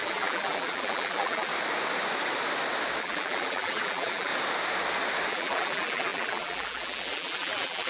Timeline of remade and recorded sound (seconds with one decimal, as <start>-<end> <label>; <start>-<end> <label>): 0.0-1.5 remade; 1.5-3.0 recorded; 3.0-4.3 remade; 4.3-5.3 recorded; 5.3-7.9 remade